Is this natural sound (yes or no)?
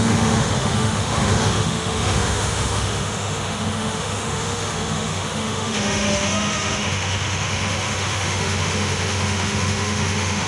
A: no